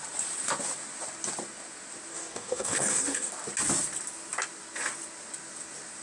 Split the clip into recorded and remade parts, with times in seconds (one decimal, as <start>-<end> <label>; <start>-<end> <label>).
0.0-2.1 recorded; 2.1-3.3 remade; 3.3-6.0 recorded